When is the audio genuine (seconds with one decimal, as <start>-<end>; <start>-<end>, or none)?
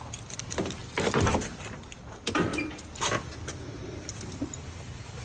0.0-5.2